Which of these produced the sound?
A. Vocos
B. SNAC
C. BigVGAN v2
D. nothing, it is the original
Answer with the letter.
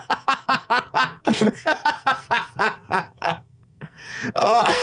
B